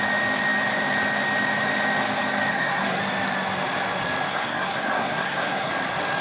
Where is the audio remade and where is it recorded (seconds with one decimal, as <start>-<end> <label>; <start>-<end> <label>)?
0.0-2.5 recorded; 2.5-3.0 remade; 3.0-4.3 recorded; 4.3-5.7 remade; 5.7-6.2 recorded